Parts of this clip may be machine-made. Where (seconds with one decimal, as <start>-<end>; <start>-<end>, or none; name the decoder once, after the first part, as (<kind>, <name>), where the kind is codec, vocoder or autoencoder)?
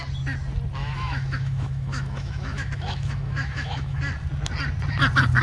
0.8-4.0 (autoencoder, DAC-VAE)